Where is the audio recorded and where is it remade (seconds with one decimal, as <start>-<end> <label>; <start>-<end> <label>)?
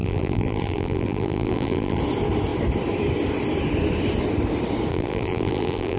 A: 0.0-2.0 remade; 2.0-4.9 recorded; 4.9-6.0 remade